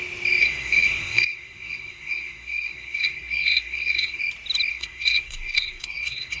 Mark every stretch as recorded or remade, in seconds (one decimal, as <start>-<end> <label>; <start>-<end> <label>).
0.0-0.4 recorded; 0.4-4.2 remade; 4.2-4.7 recorded; 4.7-6.4 remade